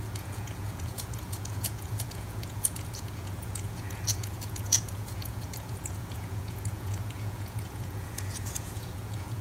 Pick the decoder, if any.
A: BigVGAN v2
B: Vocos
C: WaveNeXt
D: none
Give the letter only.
B